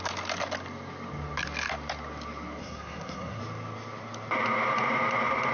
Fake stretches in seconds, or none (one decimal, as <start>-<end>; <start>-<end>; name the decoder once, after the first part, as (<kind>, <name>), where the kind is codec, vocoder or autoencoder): 2.6-3.4 (codec, SNAC)